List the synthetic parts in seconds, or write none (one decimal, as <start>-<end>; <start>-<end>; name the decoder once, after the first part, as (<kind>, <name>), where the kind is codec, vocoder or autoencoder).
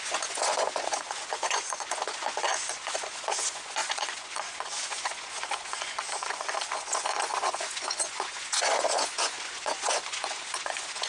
0.0-11.1 (vocoder, Vocos)